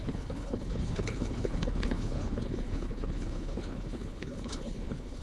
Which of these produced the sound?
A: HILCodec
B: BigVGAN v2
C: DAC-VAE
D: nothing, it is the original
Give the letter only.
A